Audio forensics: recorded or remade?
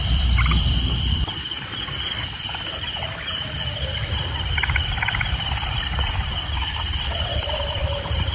remade